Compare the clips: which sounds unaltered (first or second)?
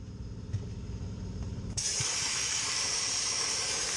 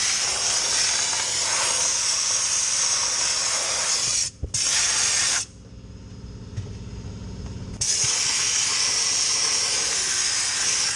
second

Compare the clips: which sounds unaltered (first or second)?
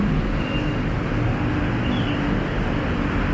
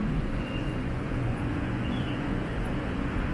first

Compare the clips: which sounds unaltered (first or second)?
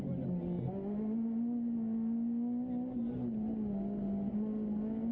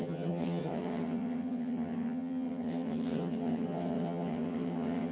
first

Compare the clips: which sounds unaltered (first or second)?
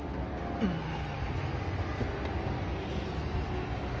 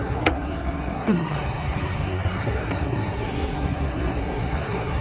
first